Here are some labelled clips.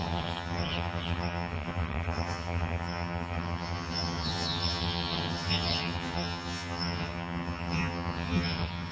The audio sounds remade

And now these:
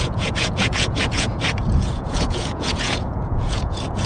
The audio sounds remade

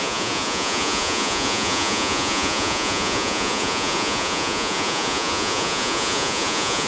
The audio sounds remade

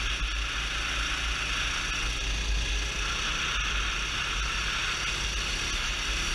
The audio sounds recorded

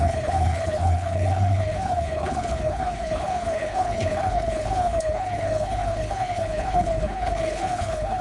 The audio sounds remade